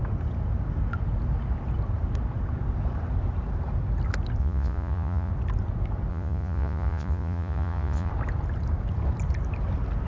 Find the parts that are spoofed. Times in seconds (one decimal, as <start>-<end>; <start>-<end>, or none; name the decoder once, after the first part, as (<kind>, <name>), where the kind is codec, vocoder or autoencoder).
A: 4.4-5.3 (vocoder, Vocos); 6.1-8.1